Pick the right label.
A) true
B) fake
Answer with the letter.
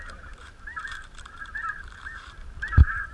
B